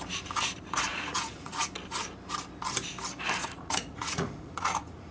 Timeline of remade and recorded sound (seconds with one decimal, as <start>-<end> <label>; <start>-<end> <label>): 0.0-0.9 recorded; 0.9-1.7 remade; 1.7-3.4 recorded; 3.4-5.1 remade